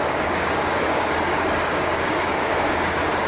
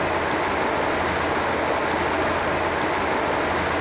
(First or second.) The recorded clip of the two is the second